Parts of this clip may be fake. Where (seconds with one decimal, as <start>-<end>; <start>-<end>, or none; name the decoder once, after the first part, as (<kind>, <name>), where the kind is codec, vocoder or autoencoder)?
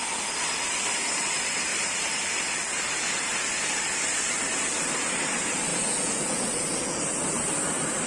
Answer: 5.7-7.0 (vocoder, Vocos)